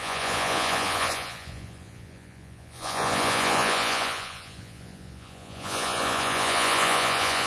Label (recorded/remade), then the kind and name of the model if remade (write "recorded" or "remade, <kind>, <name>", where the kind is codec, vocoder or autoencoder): remade, vocoder, Vocos